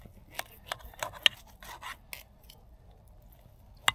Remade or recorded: recorded